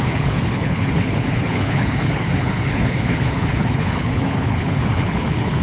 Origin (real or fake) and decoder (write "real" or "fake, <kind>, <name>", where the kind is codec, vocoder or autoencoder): fake, codec, HILCodec